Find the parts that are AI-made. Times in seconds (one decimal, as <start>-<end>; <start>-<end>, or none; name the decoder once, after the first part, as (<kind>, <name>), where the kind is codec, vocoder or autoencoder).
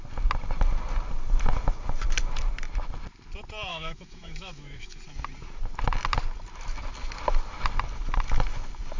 3.7-5.0 (autoencoder, DAC-VAE)